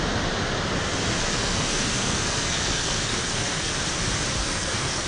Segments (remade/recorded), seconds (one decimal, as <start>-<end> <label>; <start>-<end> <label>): 0.0-1.2 recorded; 1.2-3.7 remade; 3.7-4.4 recorded; 4.4-5.1 remade